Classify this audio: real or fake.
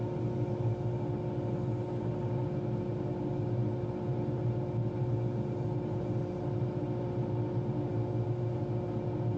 real